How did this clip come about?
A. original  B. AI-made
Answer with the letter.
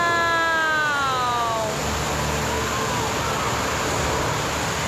A